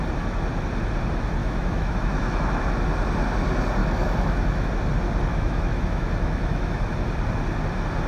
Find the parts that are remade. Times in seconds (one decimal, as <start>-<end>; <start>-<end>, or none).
1.4-2.7; 3.8-4.7; 5.3-6.9